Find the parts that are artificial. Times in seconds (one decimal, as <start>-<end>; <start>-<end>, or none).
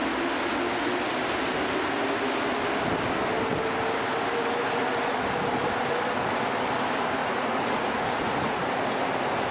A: 7.2-8.6